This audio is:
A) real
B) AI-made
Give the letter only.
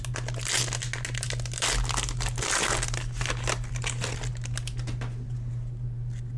A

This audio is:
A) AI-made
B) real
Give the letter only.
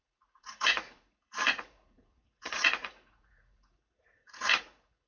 A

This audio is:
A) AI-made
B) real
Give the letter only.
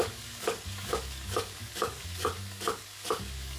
A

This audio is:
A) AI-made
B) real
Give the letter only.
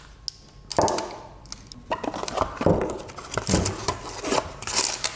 B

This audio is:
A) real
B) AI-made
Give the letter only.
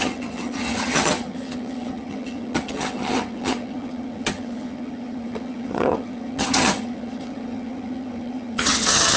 B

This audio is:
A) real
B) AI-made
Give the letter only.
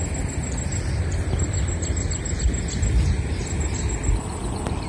A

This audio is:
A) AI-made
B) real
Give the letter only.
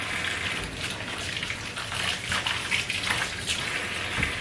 B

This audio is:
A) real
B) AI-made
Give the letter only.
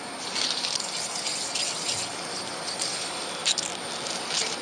A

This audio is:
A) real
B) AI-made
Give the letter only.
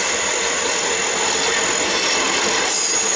A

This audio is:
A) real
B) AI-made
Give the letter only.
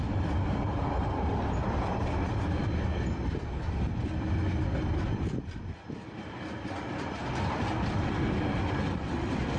A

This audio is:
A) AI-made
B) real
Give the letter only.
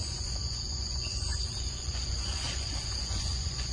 A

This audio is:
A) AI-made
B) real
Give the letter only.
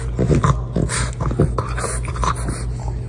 B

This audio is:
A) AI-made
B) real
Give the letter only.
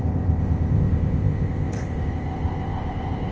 A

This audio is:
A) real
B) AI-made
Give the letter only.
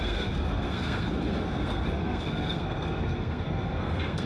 B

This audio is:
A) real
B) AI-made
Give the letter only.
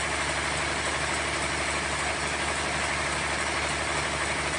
A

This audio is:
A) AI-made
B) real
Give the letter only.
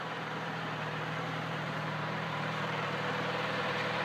A